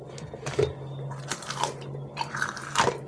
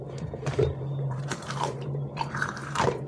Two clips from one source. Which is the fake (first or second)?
second